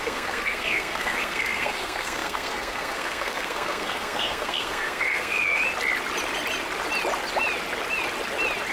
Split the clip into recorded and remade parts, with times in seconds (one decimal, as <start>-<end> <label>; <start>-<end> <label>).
0.0-5.6 remade; 5.6-8.7 recorded